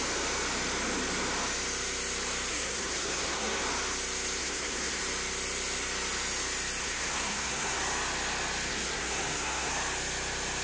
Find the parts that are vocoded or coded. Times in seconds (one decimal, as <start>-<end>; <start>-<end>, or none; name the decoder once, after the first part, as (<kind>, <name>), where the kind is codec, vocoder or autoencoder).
2.5-3.6 (codec, SNAC); 4.4-5.0; 6.8-7.8; 8.7-9.7